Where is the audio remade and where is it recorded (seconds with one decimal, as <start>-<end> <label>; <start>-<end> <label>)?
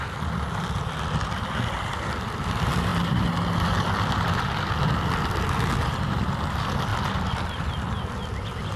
0.0-8.8 recorded